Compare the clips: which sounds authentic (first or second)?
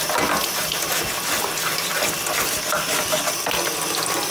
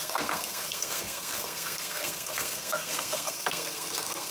first